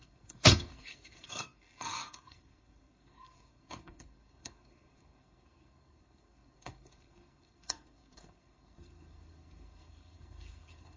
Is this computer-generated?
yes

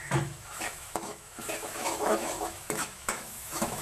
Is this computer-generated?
yes